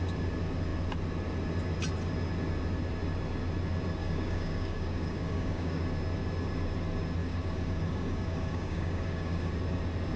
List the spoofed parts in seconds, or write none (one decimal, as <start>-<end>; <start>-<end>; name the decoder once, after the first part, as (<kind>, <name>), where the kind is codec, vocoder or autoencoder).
4.0-5.8 (codec, DAC); 7.2-9.5